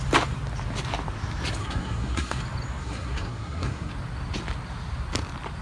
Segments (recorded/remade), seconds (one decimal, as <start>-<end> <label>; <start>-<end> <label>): 0.0-1.6 recorded; 1.6-2.4 remade; 2.4-2.8 recorded; 2.8-3.9 remade; 3.9-5.6 recorded

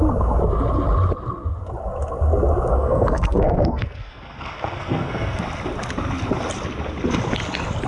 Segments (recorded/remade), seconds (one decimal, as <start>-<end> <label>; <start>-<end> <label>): 0.0-2.7 recorded; 2.7-5.4 remade; 5.4-7.9 recorded

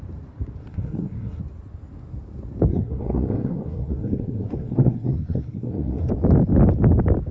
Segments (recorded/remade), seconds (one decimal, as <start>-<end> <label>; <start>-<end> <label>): 0.0-0.6 recorded; 0.6-1.4 remade; 1.4-2.7 recorded; 2.7-6.1 remade; 6.1-7.3 recorded

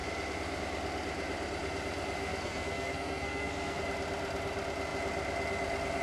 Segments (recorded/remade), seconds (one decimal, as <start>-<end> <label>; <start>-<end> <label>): 0.0-2.2 recorded; 2.2-3.8 remade; 3.8-6.0 recorded

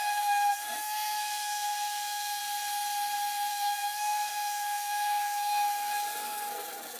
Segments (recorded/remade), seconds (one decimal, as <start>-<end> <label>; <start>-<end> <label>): 0.0-2.4 remade; 2.4-3.5 recorded; 3.5-7.0 remade

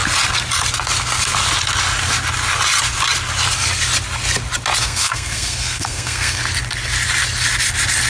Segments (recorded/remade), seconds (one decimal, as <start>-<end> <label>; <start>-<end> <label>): 0.0-4.8 recorded; 4.8-6.4 remade; 6.4-8.1 recorded

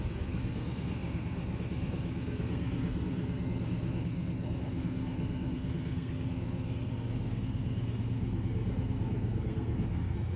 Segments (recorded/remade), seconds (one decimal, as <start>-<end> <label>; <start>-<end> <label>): 0.0-10.4 remade